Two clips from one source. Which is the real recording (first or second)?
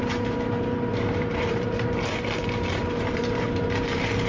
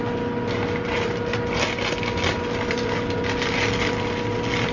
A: second